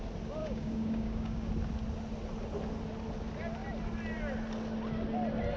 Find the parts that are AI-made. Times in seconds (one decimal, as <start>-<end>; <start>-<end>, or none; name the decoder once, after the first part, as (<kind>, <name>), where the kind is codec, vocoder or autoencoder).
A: 0.4-1.5 (codec, DAC)